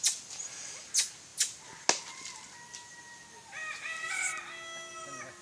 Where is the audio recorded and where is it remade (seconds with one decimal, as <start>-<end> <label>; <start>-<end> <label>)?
0.0-5.4 recorded